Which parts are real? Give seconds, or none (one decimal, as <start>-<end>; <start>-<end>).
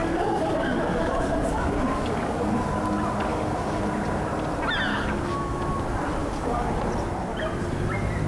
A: 2.5-3.3; 3.8-4.9; 5.6-6.2; 6.8-8.3